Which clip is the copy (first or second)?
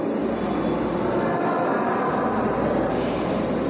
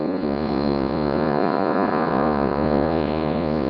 second